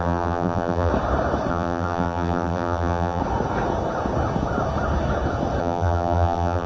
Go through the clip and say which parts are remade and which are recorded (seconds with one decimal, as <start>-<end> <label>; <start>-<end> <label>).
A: 0.0-0.9 remade; 0.9-1.5 recorded; 1.5-3.2 remade; 3.2-5.6 recorded; 5.6-6.7 remade